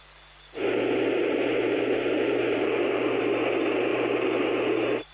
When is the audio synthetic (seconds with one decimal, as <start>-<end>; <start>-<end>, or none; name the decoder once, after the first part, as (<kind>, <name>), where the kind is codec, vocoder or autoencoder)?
1.2-3.2 (vocoder, BigVGAN v2); 3.9-5.1